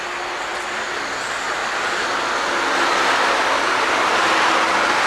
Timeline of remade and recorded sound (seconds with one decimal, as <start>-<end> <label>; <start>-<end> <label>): 0.0-5.1 recorded